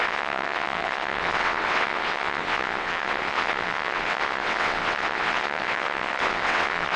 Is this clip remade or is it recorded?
remade